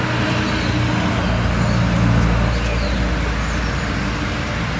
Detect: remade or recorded recorded